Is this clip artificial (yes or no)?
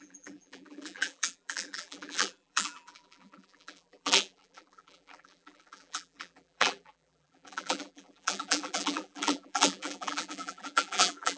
yes